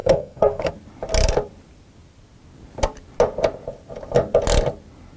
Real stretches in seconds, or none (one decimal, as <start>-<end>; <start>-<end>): 0.7-5.2